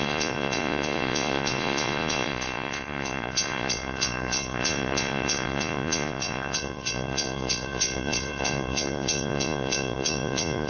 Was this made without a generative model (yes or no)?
no